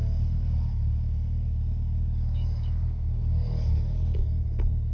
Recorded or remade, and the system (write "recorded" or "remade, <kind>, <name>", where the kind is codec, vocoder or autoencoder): remade, codec, DAC